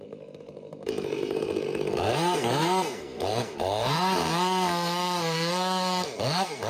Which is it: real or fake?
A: fake